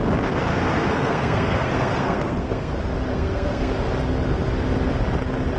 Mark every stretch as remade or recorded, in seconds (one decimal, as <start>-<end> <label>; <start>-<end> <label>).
0.0-0.5 recorded; 0.5-2.7 remade; 2.7-3.1 recorded; 3.1-3.7 remade; 3.7-5.6 recorded